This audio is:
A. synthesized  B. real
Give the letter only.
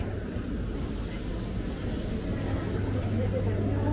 B